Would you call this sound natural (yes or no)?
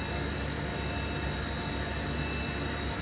yes